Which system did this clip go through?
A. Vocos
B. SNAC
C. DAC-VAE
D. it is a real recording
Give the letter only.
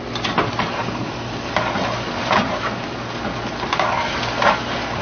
D